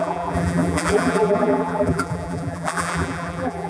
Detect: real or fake fake